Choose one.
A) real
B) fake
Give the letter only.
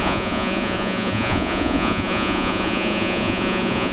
B